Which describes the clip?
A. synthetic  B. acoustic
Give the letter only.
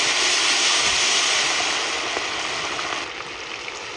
B